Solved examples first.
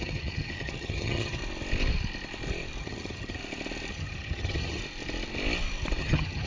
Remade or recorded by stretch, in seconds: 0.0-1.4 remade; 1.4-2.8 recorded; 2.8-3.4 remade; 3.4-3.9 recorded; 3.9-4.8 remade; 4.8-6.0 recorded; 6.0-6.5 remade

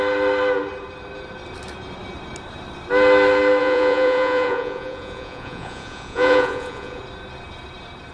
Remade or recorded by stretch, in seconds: 0.0-3.6 recorded; 3.6-7.0 remade; 7.0-8.1 recorded

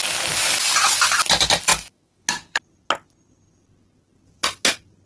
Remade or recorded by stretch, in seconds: 0.0-1.7 recorded; 1.7-2.6 remade; 2.6-5.1 recorded

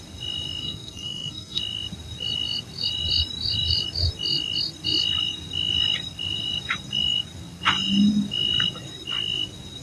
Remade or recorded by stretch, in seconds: 0.0-0.6 recorded; 0.6-1.6 remade; 1.6-9.8 recorded

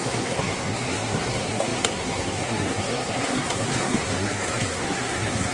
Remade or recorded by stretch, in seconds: 0.0-5.5 remade

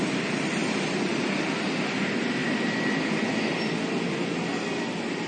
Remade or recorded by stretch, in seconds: 0.0-5.3 recorded

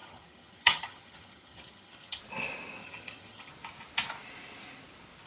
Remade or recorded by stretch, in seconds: 0.0-2.2 remade; 2.2-2.8 recorded; 2.8-3.5 remade; 3.5-5.3 recorded